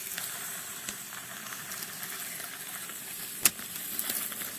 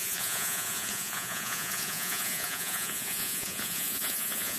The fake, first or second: second